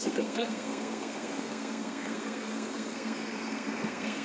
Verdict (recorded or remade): remade